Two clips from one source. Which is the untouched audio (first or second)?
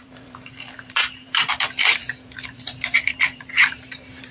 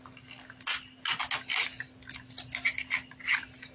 second